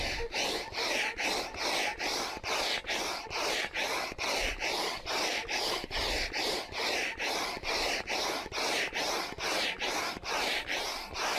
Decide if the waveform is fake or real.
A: fake